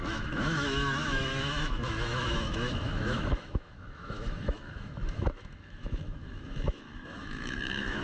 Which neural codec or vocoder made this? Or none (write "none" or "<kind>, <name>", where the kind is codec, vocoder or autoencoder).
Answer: autoencoder, DAC-VAE